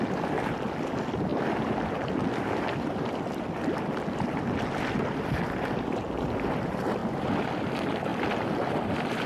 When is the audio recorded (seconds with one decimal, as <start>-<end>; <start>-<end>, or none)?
0.0-9.3